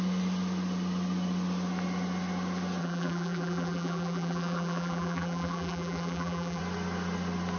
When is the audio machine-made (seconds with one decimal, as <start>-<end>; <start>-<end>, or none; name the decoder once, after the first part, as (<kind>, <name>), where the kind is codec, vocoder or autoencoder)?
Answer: 2.8-6.6 (vocoder, BigVGAN v2)